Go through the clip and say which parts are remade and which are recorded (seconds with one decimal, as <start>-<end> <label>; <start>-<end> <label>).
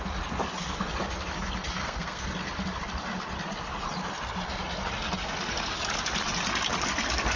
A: 0.0-1.8 recorded; 1.8-2.3 remade; 2.3-7.4 recorded